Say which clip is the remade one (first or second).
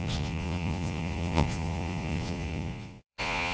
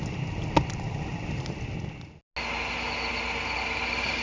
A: first